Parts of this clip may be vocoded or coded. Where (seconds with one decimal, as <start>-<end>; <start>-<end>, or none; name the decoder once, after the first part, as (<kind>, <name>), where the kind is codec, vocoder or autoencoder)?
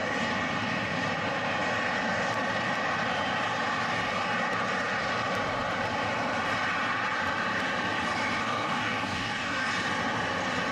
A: 8.4-9.7 (codec, DAC)